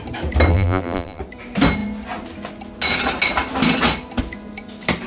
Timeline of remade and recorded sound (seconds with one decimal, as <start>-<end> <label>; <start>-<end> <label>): 0.0-0.5 recorded; 0.5-1.2 remade; 1.2-5.1 recorded